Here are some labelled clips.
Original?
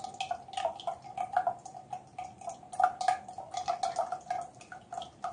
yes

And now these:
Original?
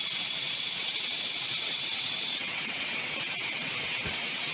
no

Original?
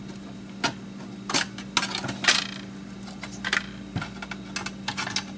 yes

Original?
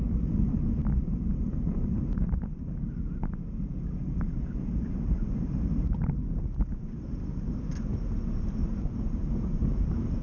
no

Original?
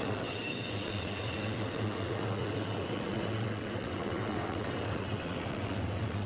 no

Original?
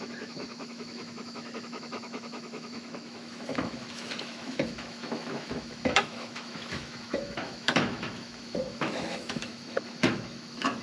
no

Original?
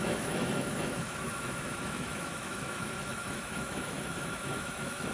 no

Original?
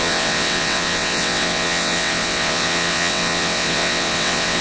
no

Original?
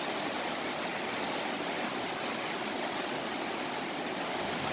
yes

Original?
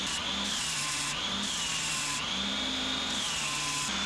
yes